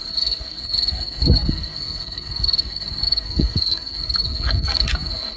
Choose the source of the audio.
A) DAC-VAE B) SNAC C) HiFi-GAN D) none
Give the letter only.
B